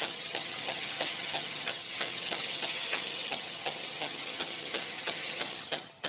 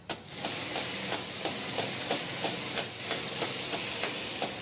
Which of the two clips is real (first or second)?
second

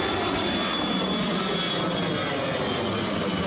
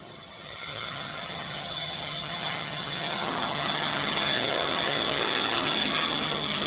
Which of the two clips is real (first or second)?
first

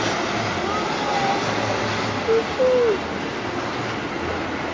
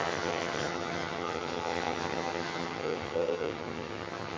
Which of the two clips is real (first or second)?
first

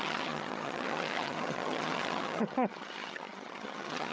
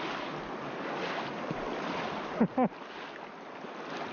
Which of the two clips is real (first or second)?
second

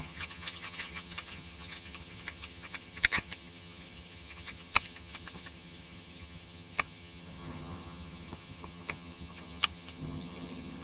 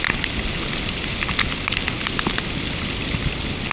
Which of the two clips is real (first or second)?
second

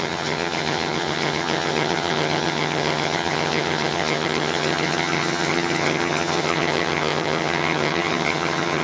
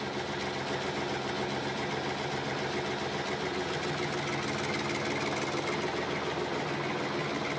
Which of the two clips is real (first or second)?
second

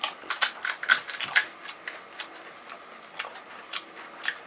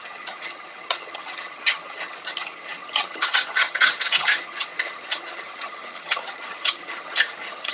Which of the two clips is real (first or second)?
first